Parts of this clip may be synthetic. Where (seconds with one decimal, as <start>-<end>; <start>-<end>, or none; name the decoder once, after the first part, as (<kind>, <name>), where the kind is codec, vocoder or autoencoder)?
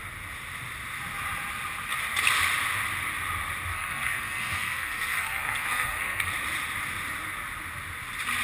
3.7-6.3 (codec, SNAC)